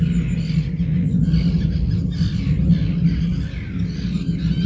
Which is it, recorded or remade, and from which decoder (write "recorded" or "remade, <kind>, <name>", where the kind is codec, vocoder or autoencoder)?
recorded